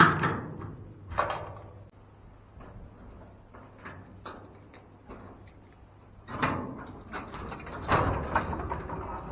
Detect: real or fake real